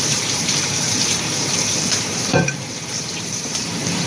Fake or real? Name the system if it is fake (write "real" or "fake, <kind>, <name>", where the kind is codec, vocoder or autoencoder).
fake, vocoder, BigVGAN v2